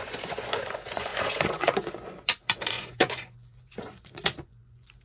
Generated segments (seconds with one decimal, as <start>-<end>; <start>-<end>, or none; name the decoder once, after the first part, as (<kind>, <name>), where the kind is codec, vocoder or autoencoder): 0.0-5.0 (vocoder, Vocos)